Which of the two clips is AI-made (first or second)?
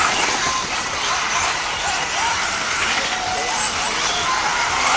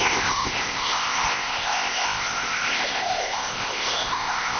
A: second